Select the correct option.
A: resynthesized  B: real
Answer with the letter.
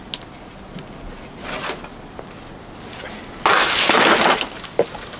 B